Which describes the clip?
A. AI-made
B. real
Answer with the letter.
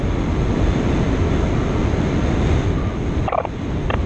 B